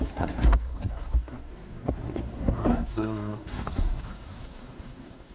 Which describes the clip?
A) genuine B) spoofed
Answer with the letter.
B